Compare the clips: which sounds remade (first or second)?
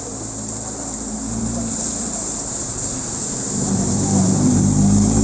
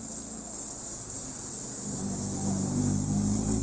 first